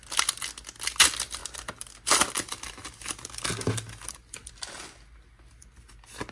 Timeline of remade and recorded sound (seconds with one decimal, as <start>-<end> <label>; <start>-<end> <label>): 0.0-6.3 recorded

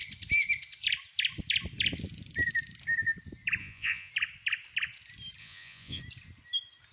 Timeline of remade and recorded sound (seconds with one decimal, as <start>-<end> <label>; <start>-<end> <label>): 0.0-3.6 recorded; 3.6-4.1 remade; 4.1-5.4 recorded; 5.4-6.0 remade; 6.0-6.9 recorded

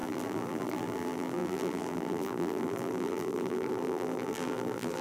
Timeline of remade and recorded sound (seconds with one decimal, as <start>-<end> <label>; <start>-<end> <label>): 0.0-5.0 remade

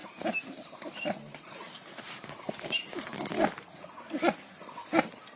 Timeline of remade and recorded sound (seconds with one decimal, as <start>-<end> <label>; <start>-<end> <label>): 0.0-3.2 remade; 3.2-5.4 recorded

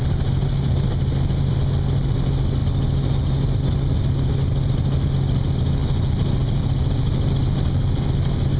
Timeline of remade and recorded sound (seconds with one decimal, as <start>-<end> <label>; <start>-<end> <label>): 0.0-8.6 recorded

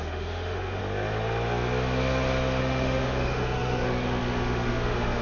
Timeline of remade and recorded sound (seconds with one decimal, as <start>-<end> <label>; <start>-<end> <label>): 0.0-0.8 remade; 0.8-2.6 recorded; 2.6-5.2 remade

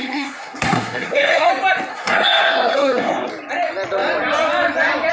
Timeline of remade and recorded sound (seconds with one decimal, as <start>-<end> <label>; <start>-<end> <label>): 0.0-1.5 remade; 1.5-1.9 recorded; 1.9-3.3 remade; 3.3-5.1 recorded